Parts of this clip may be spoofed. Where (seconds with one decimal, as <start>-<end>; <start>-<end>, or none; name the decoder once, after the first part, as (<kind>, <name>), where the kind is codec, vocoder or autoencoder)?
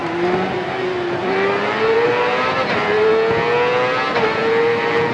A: 0.0-3.1 (vocoder, BigVGAN v2); 4.1-5.1